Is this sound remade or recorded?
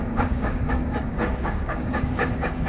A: remade